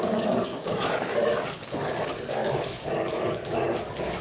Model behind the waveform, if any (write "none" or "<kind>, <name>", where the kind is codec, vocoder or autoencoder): codec, DAC